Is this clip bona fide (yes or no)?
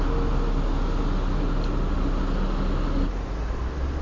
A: yes